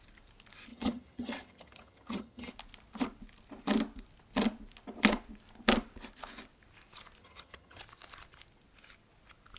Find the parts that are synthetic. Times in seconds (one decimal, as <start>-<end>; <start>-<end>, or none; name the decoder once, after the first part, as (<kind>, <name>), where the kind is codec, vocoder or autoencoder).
0.7-2.5 (vocoder, HiFi-GAN); 7.2-7.8

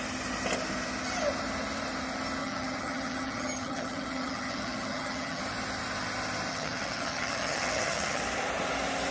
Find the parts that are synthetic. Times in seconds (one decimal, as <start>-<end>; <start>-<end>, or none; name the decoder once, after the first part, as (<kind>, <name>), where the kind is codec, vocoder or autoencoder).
2.4-5.4 (vocoder, HiFi-GAN); 6.5-8.2

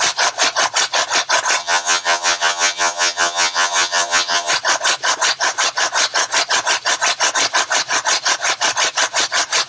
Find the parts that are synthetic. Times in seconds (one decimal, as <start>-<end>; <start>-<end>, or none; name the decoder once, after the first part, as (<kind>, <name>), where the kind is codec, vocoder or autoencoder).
1.6-4.5 (vocoder, HiFi-GAN)

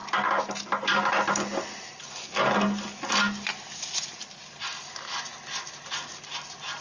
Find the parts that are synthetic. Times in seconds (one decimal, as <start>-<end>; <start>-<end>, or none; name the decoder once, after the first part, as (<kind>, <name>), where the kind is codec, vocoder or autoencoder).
none

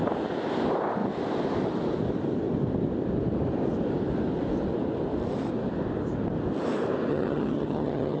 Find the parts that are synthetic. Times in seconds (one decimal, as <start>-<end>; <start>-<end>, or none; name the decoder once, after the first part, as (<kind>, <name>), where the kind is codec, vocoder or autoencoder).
7.1-8.2 (vocoder, HiFi-GAN)

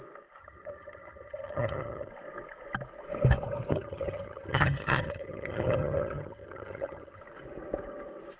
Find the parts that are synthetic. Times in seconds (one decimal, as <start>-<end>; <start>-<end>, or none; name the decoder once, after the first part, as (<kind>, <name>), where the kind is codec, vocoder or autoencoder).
0.4-2.1 (vocoder, HiFi-GAN); 3.7-7.2